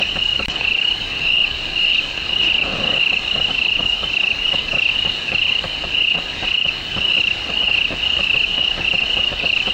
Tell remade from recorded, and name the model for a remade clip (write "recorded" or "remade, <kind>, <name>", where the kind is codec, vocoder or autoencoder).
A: remade, codec, DAC